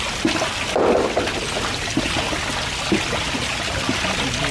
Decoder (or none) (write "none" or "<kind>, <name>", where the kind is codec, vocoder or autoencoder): none